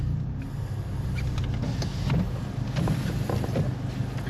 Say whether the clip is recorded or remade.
recorded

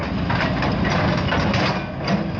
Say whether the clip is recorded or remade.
recorded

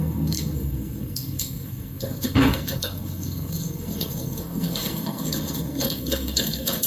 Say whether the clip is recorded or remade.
remade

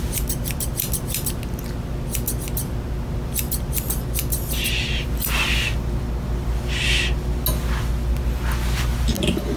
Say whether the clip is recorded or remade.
recorded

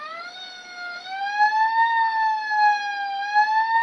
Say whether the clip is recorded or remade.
recorded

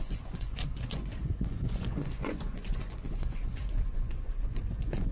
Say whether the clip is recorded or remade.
remade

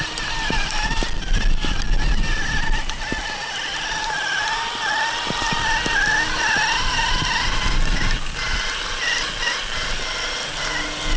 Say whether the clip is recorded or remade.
recorded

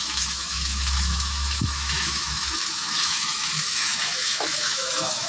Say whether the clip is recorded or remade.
remade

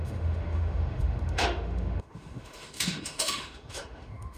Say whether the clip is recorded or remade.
remade